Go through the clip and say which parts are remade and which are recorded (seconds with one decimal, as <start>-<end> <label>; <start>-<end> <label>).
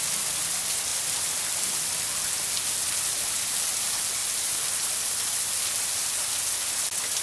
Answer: 0.0-0.9 recorded; 0.9-2.3 remade; 2.3-4.2 recorded; 4.2-6.3 remade; 6.3-7.2 recorded